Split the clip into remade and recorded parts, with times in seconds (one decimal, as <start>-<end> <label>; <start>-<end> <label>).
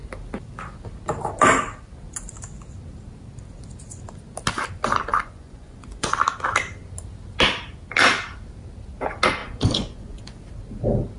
0.0-5.1 recorded; 5.1-6.1 remade; 6.1-9.4 recorded; 9.4-10.4 remade; 10.4-11.2 recorded